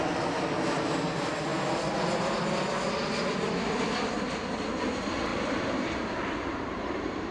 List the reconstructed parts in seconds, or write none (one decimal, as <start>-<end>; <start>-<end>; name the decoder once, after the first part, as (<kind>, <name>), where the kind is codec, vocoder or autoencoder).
5.3-7.3 (vocoder, BigVGAN v2)